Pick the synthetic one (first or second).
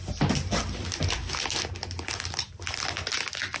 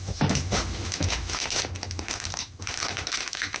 second